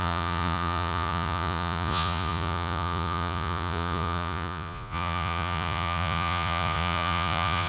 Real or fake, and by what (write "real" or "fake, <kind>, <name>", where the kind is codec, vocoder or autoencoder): fake, vocoder, Vocos